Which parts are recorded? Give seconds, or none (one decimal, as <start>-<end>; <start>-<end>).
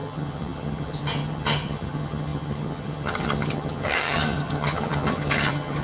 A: none